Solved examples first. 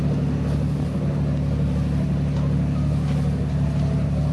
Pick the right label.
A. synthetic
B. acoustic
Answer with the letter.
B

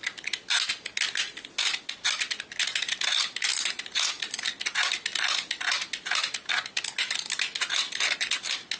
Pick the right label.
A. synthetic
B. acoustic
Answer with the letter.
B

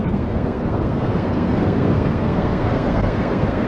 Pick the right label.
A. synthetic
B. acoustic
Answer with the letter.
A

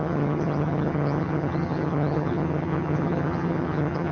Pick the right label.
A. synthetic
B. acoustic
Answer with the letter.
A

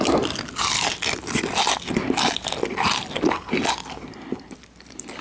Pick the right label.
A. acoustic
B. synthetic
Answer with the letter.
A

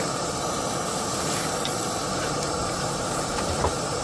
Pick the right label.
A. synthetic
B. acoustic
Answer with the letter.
B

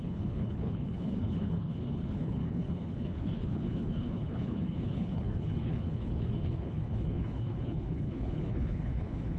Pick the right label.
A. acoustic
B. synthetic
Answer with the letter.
B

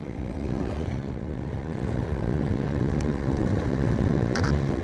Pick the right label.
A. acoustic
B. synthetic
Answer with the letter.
B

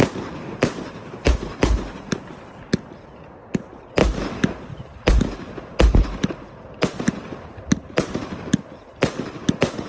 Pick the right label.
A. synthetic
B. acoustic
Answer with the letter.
B